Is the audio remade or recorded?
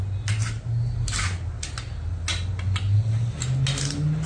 recorded